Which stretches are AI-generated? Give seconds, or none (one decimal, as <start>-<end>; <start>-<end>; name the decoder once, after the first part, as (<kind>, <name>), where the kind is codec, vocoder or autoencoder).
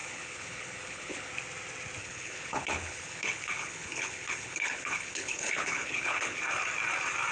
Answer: 0.0-1.3 (codec, HILCodec); 2.0-6.4